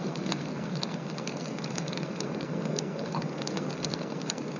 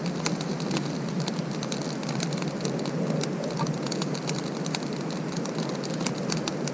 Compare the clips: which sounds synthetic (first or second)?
first